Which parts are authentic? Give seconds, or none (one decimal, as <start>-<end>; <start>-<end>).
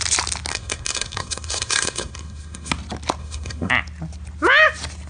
0.0-0.5; 2.7-3.2; 3.7-5.1